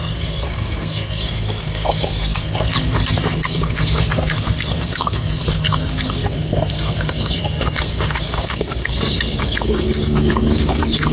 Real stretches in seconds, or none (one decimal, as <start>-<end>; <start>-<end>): none